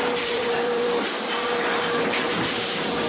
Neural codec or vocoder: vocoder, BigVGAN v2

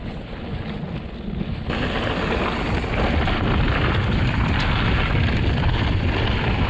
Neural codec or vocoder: none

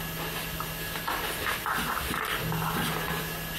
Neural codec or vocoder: none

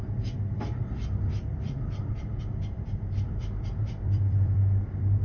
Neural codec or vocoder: vocoder, BigVGAN v2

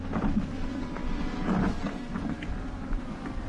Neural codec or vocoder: none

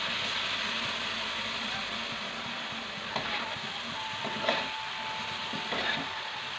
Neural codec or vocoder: none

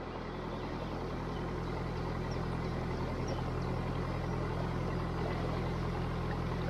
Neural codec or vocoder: none